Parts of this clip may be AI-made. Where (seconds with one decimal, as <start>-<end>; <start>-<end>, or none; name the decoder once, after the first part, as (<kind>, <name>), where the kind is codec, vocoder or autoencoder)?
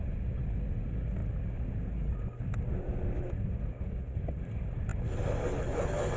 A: none